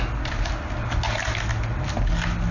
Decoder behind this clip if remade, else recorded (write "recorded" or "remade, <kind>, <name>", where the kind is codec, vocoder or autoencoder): recorded